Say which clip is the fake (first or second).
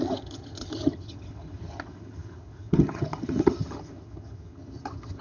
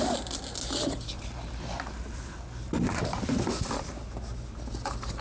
first